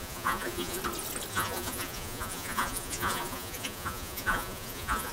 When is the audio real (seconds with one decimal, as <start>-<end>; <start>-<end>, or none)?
0.8-1.3